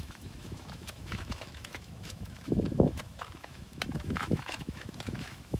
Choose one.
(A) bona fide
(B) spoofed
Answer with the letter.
B